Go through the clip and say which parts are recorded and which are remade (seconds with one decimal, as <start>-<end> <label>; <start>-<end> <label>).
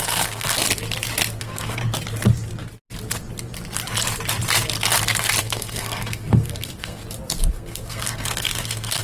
0.0-0.6 remade; 0.6-1.4 recorded; 1.4-1.8 remade; 1.8-5.4 recorded; 5.4-7.0 remade; 7.0-7.5 recorded; 7.5-9.0 remade